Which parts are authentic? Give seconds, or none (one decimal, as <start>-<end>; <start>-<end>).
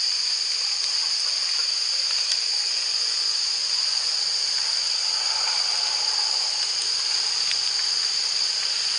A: 0.0-2.7; 4.2-9.0